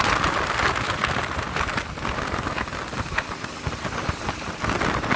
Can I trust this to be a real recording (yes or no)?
yes